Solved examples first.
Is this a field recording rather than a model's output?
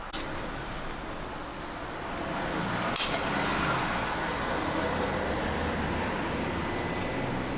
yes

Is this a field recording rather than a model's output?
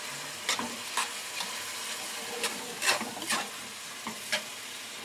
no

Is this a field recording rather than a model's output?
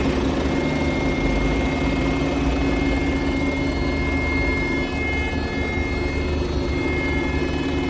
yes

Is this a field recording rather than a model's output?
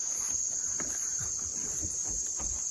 yes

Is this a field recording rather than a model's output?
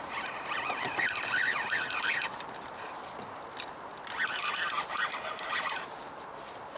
yes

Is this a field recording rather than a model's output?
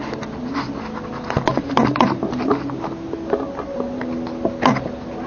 yes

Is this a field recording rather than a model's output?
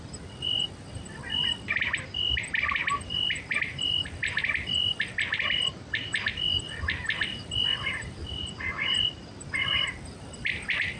yes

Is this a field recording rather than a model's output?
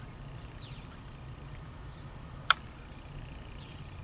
no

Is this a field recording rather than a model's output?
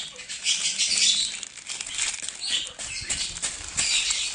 yes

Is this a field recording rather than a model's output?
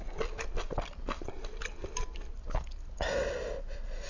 yes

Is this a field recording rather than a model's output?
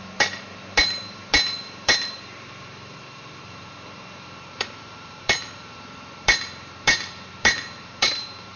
no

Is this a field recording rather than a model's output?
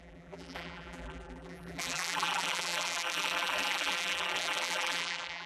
no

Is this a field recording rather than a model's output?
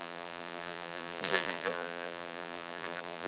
no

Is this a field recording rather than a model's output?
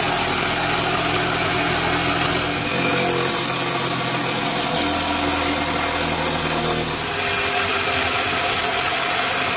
yes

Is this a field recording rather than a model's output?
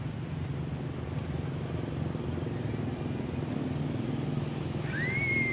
yes